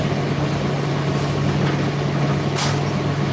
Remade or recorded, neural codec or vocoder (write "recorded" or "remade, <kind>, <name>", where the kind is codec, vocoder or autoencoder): recorded